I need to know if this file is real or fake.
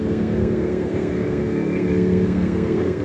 fake